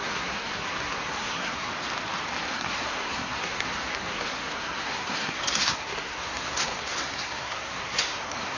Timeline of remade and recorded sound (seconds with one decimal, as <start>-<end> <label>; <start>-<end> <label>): 0.0-1.7 remade; 1.7-2.5 recorded; 2.5-8.6 remade